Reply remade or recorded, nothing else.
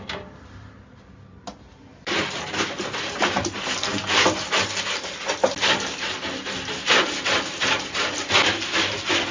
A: recorded